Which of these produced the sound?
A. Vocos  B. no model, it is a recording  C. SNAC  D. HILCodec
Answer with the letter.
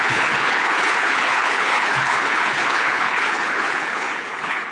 D